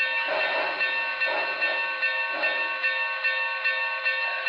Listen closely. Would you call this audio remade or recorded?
recorded